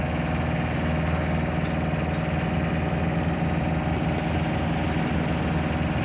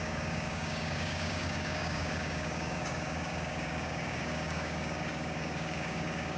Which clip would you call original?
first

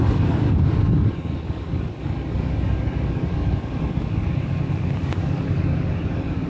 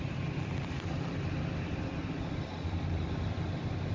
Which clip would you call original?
second